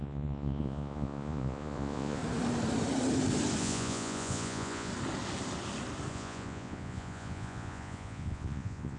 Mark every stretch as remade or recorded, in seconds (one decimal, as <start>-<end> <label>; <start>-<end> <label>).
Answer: 0.0-2.2 remade; 2.2-3.6 recorded; 3.6-4.9 remade; 4.9-6.1 recorded; 6.1-9.0 remade